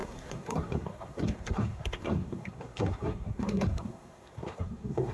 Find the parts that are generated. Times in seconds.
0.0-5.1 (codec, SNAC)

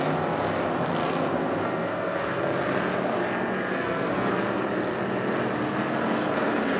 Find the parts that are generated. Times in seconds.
1.0-2.4 (codec, SNAC); 3.7-4.3